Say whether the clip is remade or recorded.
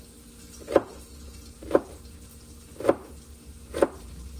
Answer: recorded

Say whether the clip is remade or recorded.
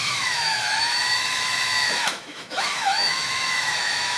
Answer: remade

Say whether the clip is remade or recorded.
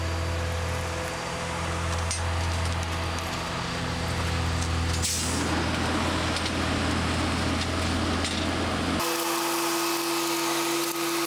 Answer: recorded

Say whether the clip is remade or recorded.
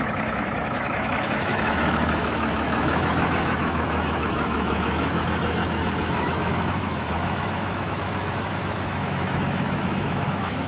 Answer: remade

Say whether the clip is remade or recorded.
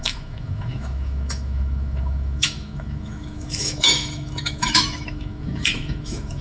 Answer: remade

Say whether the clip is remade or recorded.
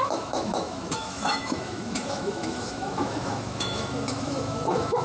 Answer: remade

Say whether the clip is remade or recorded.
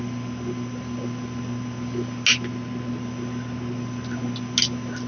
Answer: recorded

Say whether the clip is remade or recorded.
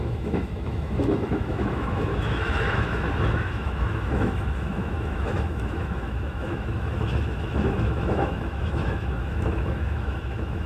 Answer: remade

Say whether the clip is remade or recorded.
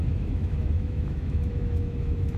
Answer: remade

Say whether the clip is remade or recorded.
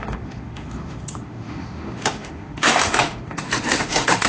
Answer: remade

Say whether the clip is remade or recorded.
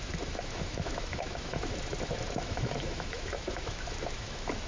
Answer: remade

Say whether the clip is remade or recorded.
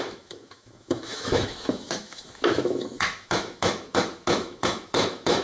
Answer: remade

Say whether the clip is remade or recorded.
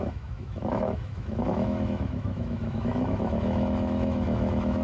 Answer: remade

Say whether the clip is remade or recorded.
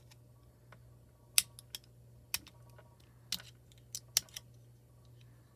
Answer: recorded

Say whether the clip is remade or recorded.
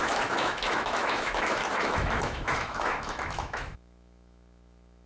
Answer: remade